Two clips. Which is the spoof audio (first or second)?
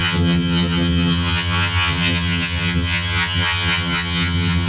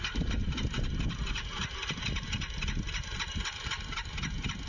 first